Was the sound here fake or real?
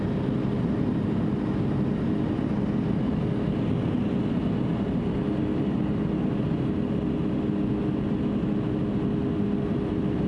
real